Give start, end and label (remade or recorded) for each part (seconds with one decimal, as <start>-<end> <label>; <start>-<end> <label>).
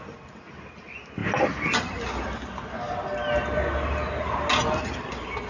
0.0-5.5 recorded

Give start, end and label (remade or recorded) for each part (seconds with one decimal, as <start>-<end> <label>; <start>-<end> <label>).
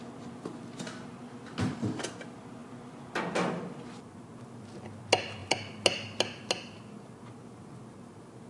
0.0-8.5 recorded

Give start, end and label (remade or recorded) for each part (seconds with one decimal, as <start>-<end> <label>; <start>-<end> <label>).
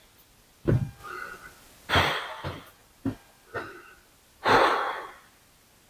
0.0-5.9 recorded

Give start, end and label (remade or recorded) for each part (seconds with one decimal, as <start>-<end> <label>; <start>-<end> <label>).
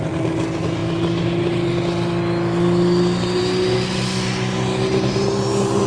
0.0-5.9 recorded